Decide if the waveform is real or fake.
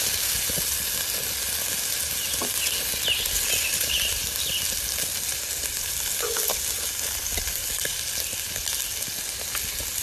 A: real